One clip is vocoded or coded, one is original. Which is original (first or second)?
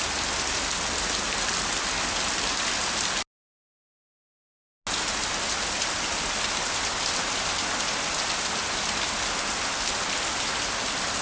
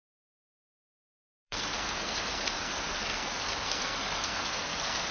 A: first